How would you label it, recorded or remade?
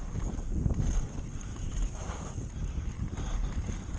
recorded